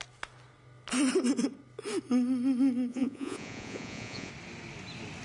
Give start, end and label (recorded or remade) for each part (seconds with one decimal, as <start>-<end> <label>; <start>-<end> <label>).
0.0-2.9 recorded; 2.9-4.3 remade; 4.3-5.2 recorded